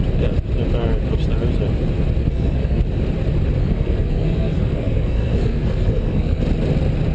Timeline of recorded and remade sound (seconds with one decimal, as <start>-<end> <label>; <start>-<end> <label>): 0.0-2.2 recorded; 2.2-2.8 remade; 2.8-3.6 recorded; 3.6-6.4 remade; 6.4-7.1 recorded